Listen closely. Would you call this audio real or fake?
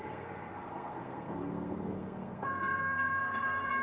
fake